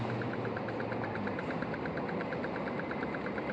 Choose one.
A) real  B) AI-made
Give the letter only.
A